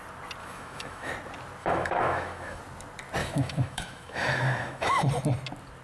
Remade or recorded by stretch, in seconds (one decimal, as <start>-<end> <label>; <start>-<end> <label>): 0.0-0.4 recorded; 0.4-1.1 remade; 1.1-1.6 recorded; 1.6-2.6 remade; 2.6-3.2 recorded; 3.2-5.1 remade; 5.1-5.8 recorded